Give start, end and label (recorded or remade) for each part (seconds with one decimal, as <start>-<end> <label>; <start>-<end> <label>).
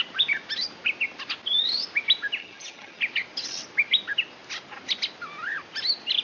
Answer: 0.0-2.4 recorded; 2.4-3.0 remade; 3.0-6.2 recorded